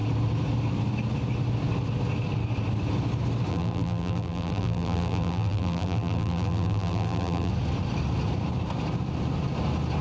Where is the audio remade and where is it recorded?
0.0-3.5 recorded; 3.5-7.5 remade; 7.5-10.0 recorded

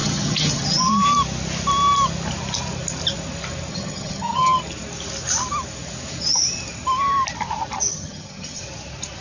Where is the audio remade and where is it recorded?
0.0-0.9 remade; 0.9-3.7 recorded; 3.7-4.6 remade; 4.6-7.9 recorded; 7.9-8.6 remade; 8.6-9.2 recorded

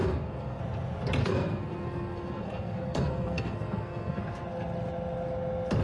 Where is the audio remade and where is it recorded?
0.0-0.6 remade; 0.6-1.2 recorded; 1.2-4.2 remade; 4.2-5.8 recorded

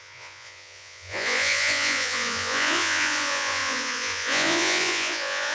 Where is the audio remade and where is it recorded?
0.0-5.5 remade

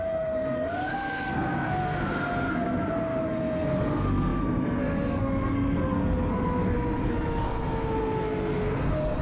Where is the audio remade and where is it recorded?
0.0-9.2 remade